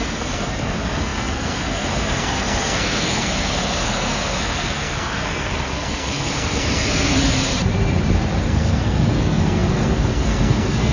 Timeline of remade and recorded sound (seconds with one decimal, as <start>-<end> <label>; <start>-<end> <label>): 0.0-7.2 remade; 7.2-8.4 recorded; 8.4-10.9 remade